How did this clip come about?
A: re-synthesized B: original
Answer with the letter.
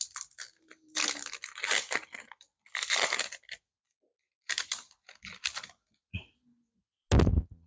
B